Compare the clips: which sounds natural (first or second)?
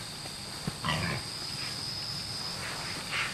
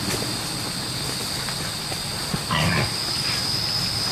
second